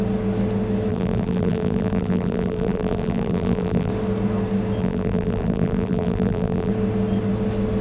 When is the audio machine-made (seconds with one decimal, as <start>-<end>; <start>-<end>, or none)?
0.9-3.9; 4.8-6.7